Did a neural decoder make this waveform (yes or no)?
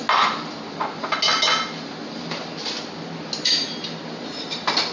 no